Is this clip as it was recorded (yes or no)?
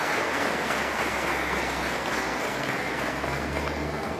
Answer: no